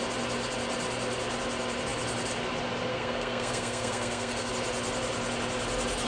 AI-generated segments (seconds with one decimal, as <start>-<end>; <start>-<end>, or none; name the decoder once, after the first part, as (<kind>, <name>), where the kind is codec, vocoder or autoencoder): 2.9-4.5 (codec, SNAC)